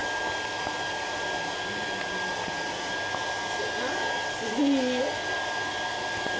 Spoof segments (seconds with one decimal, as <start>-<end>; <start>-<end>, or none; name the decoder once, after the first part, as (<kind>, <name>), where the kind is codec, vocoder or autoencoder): none